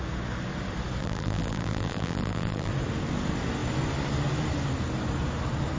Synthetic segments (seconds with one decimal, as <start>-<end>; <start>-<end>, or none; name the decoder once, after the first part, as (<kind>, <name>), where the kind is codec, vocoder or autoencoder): 1.0-2.7 (vocoder, BigVGAN v2)